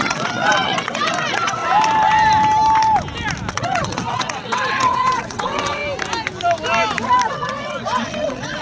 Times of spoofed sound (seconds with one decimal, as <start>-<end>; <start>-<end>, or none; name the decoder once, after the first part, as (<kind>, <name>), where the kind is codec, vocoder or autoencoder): 0.0-1.6 (vocoder, WaveNeXt); 3.5-5.8; 7.3-8.6